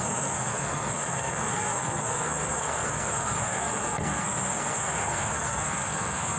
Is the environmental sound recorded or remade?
remade